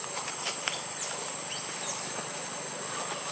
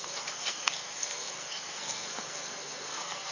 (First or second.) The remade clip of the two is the second